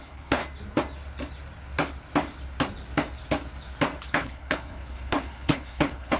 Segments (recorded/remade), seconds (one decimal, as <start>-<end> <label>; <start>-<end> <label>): 0.0-0.4 remade; 0.4-4.1 recorded; 4.1-6.2 remade